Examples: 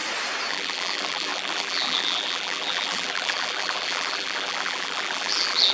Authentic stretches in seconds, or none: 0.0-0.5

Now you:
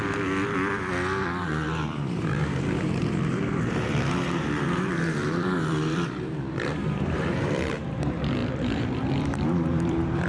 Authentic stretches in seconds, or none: 0.0-1.4

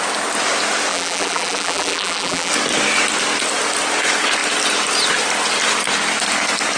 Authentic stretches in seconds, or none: 0.0-0.9; 2.5-6.8

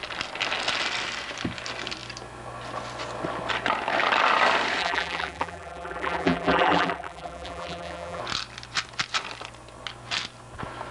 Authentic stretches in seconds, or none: 0.0-4.8; 8.2-10.9